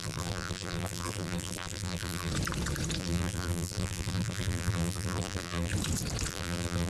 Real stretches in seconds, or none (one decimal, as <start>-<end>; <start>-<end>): 2.3-3.0; 5.7-6.3